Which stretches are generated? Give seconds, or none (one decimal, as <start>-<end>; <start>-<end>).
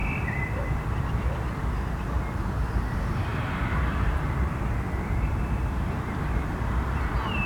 0.0-1.6; 3.3-7.5